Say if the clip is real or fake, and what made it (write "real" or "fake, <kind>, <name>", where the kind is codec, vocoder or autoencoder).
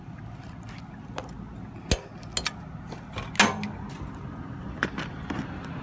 real